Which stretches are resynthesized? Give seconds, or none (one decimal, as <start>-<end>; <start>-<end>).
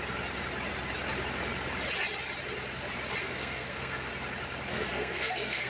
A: 3.2-4.1; 4.7-5.7